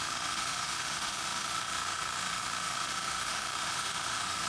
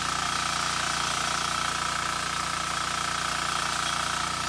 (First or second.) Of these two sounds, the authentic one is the second